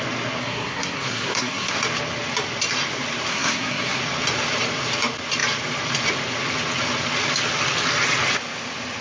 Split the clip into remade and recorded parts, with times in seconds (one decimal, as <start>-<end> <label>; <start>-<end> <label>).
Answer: 0.0-0.4 recorded; 0.4-1.8 remade; 1.8-3.3 recorded; 3.3-4.0 remade; 4.0-9.0 recorded